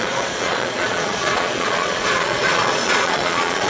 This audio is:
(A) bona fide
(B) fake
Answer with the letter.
B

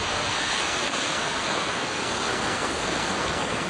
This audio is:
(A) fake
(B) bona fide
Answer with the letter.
A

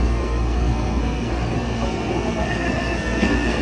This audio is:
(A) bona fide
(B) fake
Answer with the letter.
B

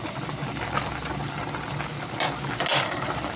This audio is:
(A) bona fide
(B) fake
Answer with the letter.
A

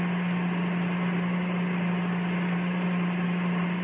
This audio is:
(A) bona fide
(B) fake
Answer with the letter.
A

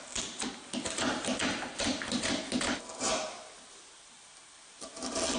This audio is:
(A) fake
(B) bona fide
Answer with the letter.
B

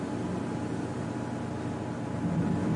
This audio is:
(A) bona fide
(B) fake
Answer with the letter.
A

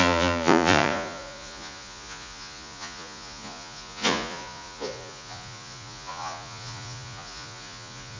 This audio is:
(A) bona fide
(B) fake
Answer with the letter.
B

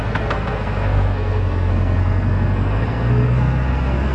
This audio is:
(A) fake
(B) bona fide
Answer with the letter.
A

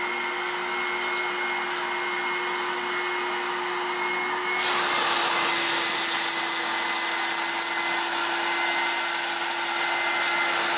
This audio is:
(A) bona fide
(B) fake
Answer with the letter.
A